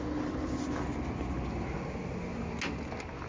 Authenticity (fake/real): real